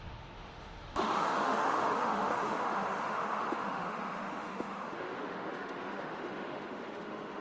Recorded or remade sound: remade